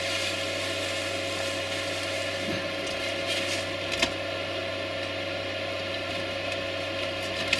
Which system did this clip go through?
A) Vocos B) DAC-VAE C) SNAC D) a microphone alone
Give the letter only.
D